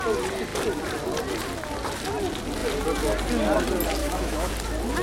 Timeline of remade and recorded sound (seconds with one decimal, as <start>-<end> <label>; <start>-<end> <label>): 0.0-4.0 recorded; 4.0-4.5 remade; 4.5-5.0 recorded